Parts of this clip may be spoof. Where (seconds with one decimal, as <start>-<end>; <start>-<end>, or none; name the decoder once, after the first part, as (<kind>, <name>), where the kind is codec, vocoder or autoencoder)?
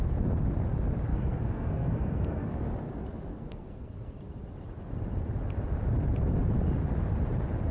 1.1-2.6 (codec, SNAC); 3.3-4.2